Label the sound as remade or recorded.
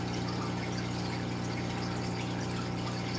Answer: recorded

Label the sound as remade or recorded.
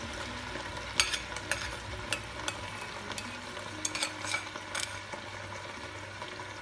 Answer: recorded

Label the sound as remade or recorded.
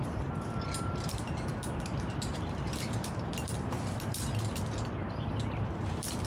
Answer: remade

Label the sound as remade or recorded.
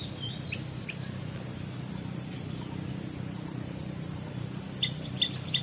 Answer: remade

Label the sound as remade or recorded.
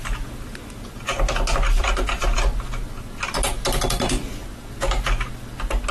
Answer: recorded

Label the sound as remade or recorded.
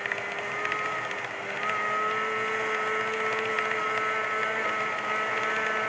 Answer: recorded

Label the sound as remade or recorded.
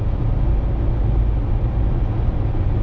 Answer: recorded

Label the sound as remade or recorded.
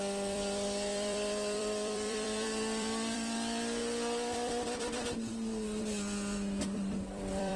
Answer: remade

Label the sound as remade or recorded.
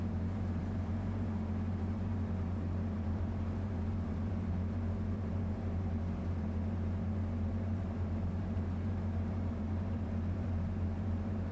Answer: remade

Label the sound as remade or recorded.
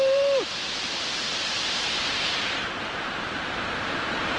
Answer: remade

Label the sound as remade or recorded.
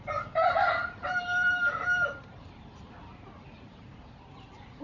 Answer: remade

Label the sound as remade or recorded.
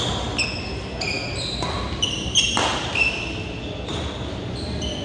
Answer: recorded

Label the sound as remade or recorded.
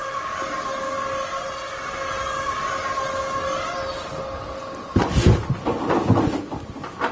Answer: recorded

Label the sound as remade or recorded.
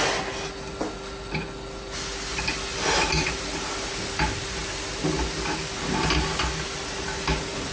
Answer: recorded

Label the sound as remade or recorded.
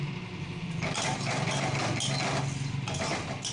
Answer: recorded